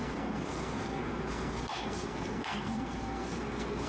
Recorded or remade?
remade